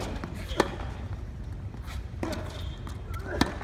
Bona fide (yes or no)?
yes